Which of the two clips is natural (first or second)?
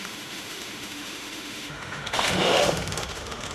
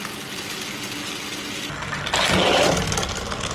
second